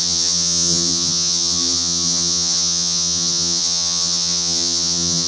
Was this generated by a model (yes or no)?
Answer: yes